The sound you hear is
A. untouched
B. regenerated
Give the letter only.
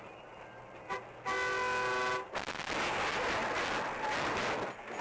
A